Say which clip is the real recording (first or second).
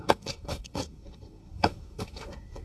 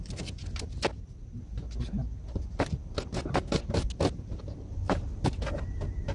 second